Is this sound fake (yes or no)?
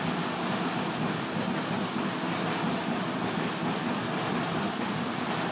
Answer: no